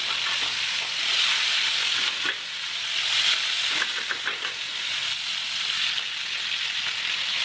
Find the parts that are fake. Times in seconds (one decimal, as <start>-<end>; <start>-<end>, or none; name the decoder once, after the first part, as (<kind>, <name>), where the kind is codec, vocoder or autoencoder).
none